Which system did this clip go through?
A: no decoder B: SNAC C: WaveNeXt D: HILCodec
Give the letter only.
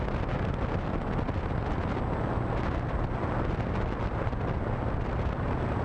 A